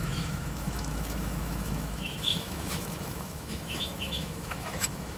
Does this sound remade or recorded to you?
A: remade